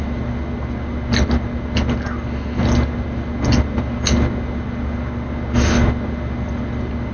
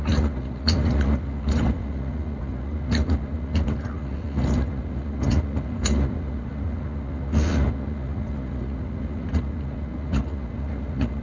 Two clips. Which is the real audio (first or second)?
first